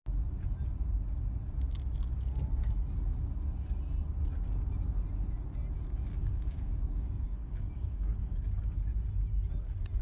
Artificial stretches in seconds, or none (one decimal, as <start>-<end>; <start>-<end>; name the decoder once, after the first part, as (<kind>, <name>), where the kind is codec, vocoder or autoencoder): 6.2-8.6 (codec, DAC)